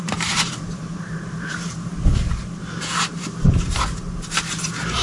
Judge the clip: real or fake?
fake